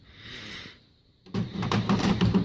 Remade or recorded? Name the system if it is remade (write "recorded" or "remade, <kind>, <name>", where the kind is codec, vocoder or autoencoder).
remade, vocoder, BigVGAN v2